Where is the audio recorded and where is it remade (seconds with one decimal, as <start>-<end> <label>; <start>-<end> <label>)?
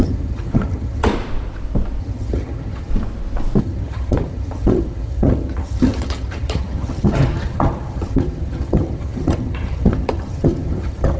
0.0-1.1 remade; 1.1-2.0 recorded; 2.0-2.9 remade; 2.9-3.6 recorded; 3.6-11.2 remade